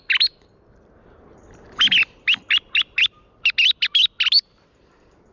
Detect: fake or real real